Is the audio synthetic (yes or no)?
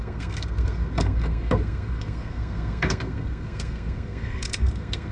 yes